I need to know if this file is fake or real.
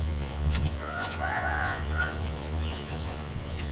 fake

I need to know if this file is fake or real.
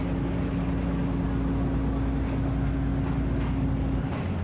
real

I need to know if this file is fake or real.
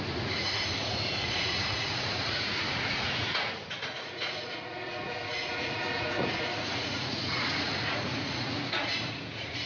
fake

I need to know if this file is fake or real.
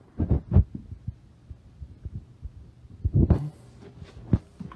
real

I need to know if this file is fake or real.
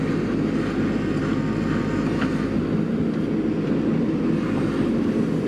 real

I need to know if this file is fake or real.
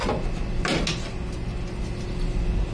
real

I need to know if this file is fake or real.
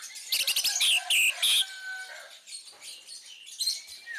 real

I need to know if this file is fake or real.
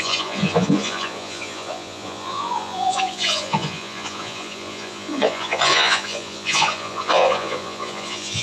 fake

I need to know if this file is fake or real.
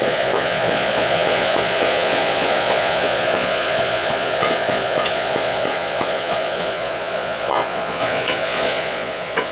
fake